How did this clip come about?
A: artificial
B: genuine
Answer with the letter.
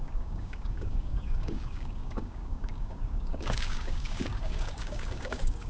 A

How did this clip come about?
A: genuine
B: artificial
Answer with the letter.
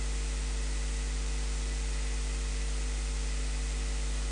A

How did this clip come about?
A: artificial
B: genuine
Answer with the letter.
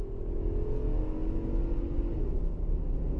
B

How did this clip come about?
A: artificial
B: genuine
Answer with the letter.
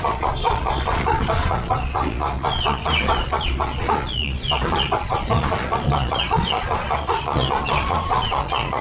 A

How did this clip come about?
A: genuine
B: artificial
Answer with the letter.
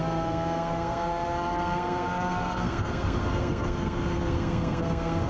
B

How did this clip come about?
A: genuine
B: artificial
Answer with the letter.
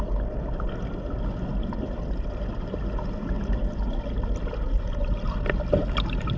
A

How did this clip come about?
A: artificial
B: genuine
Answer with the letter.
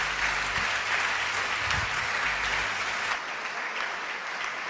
B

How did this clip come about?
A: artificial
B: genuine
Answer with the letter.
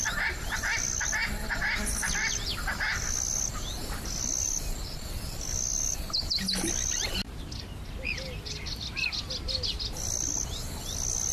B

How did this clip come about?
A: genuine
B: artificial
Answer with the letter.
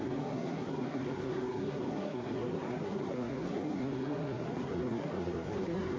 B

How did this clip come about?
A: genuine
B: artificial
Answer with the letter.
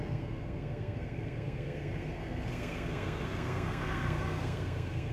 B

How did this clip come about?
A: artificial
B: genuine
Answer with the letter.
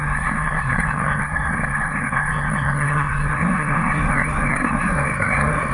A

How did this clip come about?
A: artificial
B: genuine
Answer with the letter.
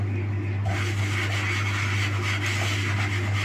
B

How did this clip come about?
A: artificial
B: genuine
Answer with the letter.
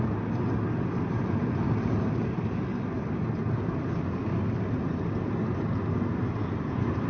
B